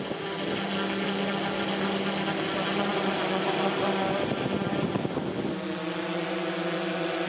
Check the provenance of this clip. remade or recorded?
recorded